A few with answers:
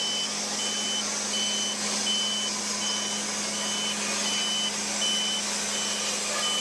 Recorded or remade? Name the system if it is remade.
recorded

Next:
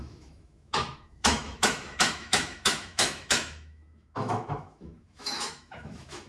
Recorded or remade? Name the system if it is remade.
remade, autoencoder, DAC-VAE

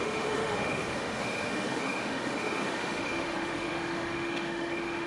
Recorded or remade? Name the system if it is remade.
remade, autoencoder, DAC-VAE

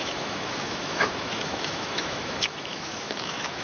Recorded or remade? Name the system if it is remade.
remade, autoencoder, DAC-VAE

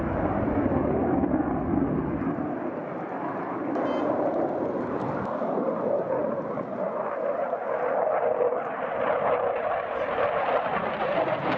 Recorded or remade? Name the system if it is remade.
recorded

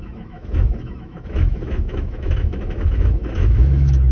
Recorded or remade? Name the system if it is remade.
remade, autoencoder, DAC-VAE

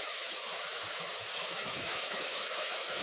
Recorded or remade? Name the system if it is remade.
remade, autoencoder, DAC-VAE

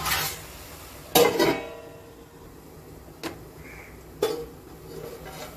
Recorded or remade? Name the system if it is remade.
recorded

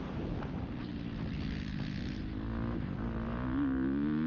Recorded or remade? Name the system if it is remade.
recorded